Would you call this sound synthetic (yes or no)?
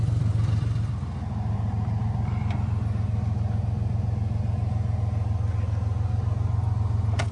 no